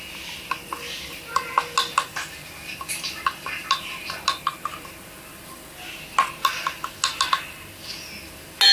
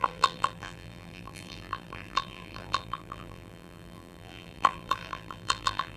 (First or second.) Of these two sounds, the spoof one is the second